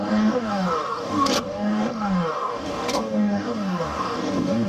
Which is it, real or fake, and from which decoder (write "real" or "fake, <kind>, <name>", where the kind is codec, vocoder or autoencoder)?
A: fake, codec, DAC